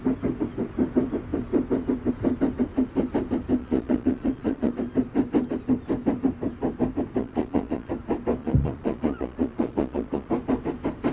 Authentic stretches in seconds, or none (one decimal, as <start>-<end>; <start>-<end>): 0.0-3.6; 4.7-7.2; 7.9-8.4; 10.3-11.1